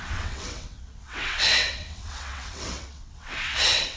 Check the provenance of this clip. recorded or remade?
remade